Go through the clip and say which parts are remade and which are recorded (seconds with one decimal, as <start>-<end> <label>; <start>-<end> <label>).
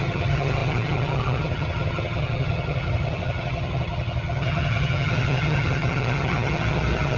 0.0-7.2 remade